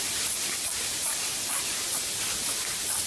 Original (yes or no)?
yes